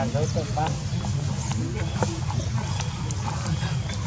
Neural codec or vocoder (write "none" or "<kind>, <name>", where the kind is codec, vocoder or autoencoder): none